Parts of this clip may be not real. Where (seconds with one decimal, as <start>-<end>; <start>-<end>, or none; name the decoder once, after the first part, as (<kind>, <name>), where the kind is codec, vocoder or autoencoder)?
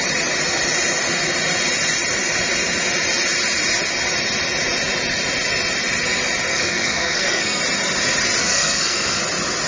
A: 6.5-7.6 (codec, SNAC); 8.4-9.2